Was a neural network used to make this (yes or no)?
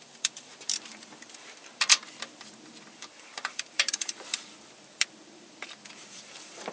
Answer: yes